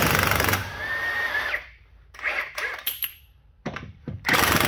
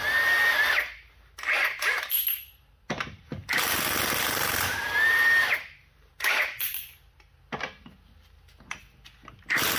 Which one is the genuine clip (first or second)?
second